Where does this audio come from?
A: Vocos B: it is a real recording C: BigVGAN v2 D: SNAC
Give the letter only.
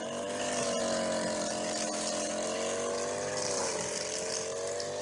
B